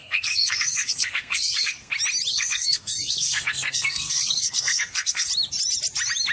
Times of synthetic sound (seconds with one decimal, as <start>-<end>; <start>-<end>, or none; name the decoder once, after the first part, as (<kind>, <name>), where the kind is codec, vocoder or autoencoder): 0.0-1.9 (codec, SNAC); 2.3-5.3